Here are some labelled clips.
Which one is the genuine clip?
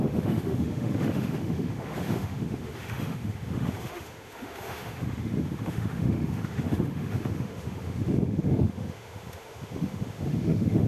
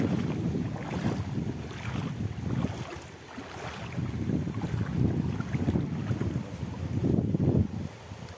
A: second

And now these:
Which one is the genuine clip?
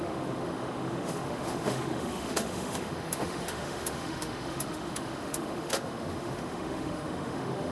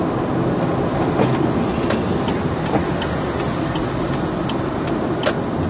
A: second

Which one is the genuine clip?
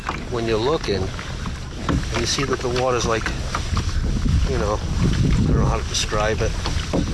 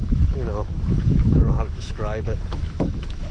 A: first